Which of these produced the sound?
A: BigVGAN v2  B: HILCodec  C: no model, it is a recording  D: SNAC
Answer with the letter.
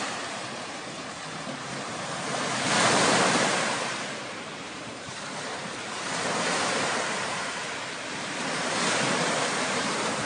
A